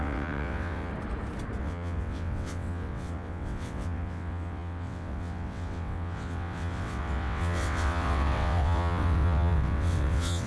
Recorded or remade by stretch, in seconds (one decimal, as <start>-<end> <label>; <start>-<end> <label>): 0.0-0.9 remade; 0.9-1.6 recorded; 1.6-10.5 remade